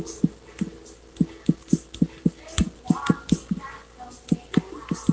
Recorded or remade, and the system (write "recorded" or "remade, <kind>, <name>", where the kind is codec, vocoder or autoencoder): recorded